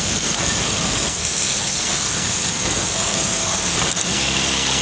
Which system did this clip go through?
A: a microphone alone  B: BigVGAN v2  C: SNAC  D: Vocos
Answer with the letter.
C